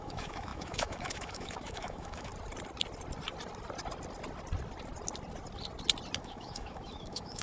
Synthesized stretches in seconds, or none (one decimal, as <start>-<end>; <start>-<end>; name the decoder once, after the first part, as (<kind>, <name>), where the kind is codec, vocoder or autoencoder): 0.0-2.3 (autoencoder, DAC-VAE); 6.2-7.4